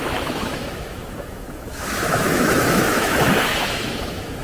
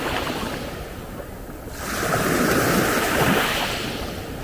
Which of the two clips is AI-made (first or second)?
first